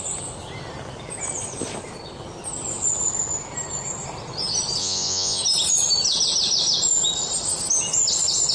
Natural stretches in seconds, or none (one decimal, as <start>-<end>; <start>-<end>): 0.0-4.8; 5.4-8.5